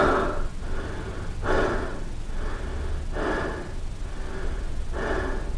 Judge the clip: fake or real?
real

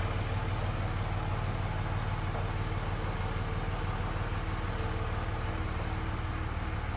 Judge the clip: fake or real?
real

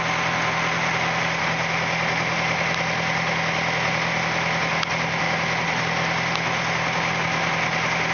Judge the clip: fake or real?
real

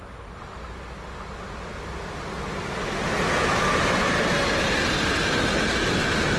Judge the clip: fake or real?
real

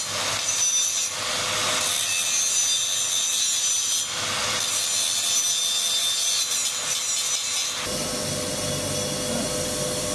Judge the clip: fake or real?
real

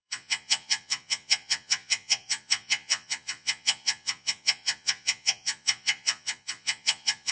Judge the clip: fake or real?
fake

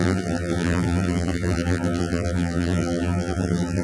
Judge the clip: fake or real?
fake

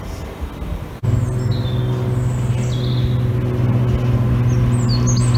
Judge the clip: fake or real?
real